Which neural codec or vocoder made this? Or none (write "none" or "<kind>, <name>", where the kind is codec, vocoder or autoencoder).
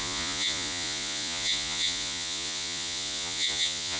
vocoder, Vocos